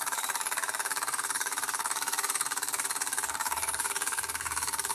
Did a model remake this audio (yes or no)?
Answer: yes